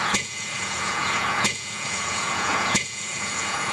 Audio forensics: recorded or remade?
remade